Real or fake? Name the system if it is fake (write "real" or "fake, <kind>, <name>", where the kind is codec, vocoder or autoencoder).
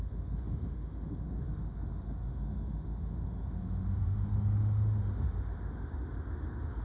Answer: fake, autoencoder, DAC-VAE